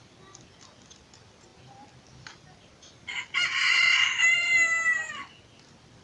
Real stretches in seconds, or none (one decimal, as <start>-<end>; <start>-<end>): 0.0-6.0